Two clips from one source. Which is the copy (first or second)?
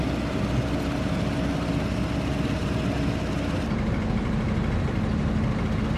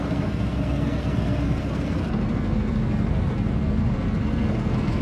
second